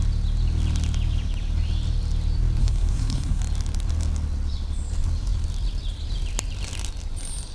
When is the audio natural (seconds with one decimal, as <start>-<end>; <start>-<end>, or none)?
0.0-2.6; 3.4-7.5